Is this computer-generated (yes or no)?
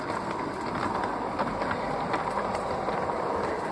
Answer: no